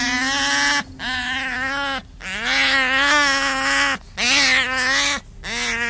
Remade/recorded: recorded